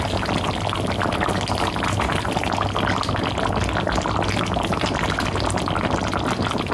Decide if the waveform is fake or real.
real